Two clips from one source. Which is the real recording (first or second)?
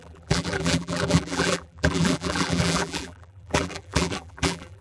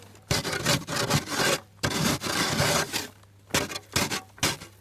second